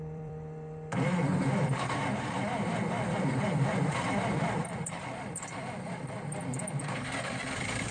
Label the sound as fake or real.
fake